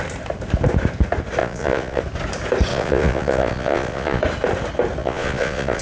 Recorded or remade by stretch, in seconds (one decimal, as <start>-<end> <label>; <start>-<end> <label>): 0.0-1.4 recorded; 1.4-2.0 remade; 2.0-2.7 recorded; 2.7-4.2 remade; 4.2-5.0 recorded; 5.0-5.8 remade